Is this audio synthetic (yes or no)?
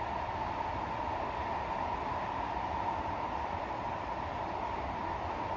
no